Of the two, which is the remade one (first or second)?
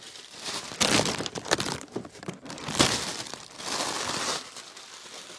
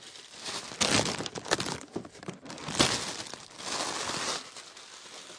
first